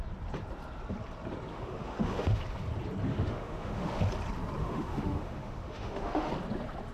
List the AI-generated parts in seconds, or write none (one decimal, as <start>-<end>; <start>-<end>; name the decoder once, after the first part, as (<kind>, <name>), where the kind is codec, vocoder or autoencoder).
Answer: 1.5-2.4 (autoencoder, DAC-VAE); 3.1-4.0; 4.6-6.3